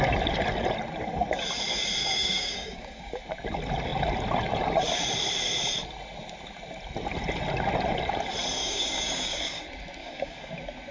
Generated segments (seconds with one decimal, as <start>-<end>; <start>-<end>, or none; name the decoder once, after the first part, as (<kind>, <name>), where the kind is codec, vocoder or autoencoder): 2.0-3.2 (codec, DAC); 8.6-9.6; 10.0-10.5